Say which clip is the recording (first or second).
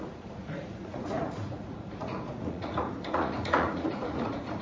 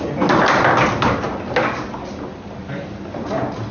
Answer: second